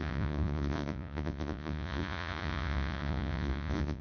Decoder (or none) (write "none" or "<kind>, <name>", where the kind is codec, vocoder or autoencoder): vocoder, Vocos